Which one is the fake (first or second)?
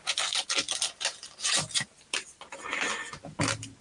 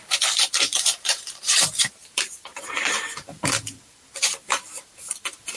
second